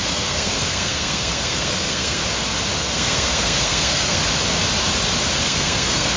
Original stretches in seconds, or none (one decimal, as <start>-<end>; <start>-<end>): 2.2-2.8; 4.2-5.4

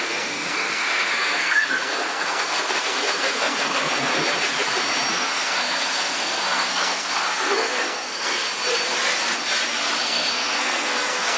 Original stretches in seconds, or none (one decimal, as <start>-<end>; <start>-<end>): 4.1-5.1; 8.4-10.0

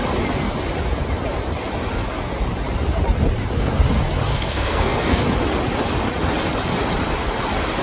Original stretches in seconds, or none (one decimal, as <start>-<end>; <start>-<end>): 0.0-4.3; 5.2-7.8

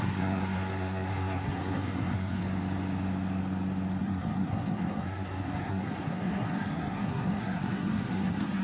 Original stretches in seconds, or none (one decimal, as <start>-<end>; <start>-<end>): 2.4-4.0

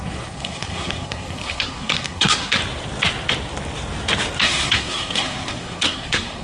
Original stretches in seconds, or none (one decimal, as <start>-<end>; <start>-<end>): 2.6-4.4

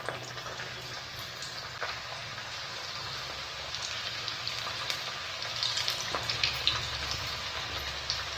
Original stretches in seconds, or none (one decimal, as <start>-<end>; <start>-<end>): 0.0-8.4

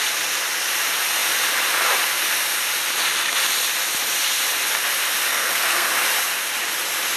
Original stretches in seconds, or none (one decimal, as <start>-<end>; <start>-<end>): 0.0-5.3; 5.9-7.2